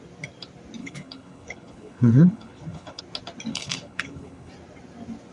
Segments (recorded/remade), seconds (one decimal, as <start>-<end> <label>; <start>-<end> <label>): 0.0-0.8 recorded; 0.8-3.0 remade; 3.0-3.5 recorded; 3.5-4.5 remade; 4.5-5.3 recorded